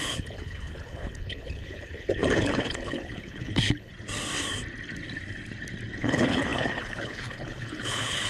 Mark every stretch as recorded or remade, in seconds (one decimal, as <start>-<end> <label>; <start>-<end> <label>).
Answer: 0.0-3.9 remade; 3.9-6.0 recorded; 6.0-8.3 remade